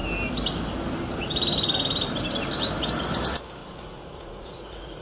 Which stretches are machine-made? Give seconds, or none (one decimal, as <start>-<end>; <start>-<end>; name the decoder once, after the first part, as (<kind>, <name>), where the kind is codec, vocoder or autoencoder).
3.6-5.0 (vocoder, Vocos)